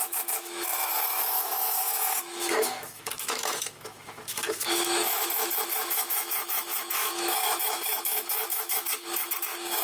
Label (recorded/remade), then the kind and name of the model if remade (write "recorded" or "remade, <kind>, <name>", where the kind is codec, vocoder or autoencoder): remade, autoencoder, DAC-VAE